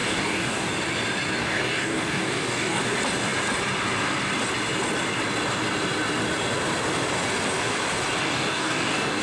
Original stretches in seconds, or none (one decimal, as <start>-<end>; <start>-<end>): 0.7-1.4; 2.8-8.2